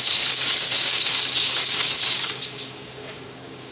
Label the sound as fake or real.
fake